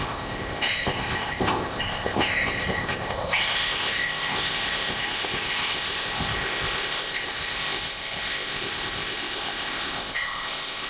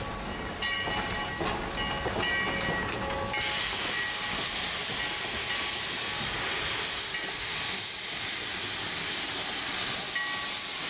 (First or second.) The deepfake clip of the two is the first